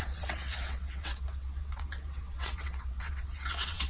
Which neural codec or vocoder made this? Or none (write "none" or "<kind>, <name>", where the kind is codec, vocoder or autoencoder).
vocoder, WaveNeXt